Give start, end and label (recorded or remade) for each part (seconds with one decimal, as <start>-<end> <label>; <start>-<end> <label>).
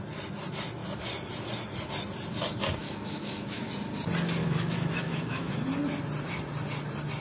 0.0-2.8 recorded; 2.8-3.7 remade; 3.7-4.4 recorded; 4.4-5.5 remade; 5.5-7.2 recorded